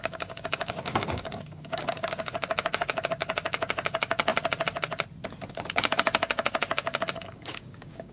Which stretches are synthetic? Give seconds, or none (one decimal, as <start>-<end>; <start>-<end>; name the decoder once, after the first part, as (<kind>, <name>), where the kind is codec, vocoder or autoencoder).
0.0-4.3 (codec, DAC); 5.5-8.1

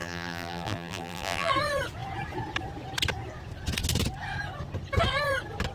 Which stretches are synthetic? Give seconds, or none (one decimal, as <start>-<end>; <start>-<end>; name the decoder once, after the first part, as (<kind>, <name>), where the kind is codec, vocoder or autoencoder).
0.0-1.5 (vocoder, BigVGAN v2)